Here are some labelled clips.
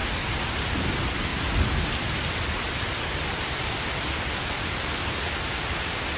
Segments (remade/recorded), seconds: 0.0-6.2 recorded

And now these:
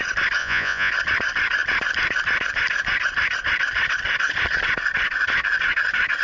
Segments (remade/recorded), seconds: 0.0-0.4 recorded; 0.4-0.9 remade; 0.9-6.2 recorded

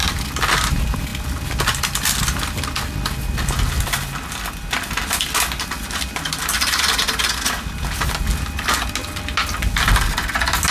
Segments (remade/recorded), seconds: 0.0-10.7 recorded